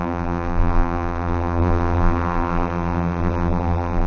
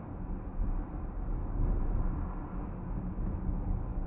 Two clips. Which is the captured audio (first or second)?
second